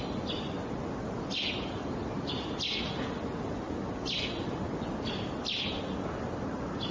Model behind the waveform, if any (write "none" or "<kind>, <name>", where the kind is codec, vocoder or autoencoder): none